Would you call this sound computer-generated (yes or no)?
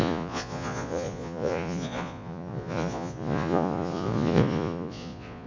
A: yes